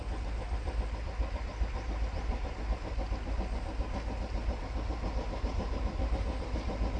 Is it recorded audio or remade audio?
recorded